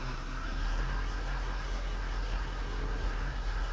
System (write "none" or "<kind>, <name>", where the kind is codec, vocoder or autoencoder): codec, SNAC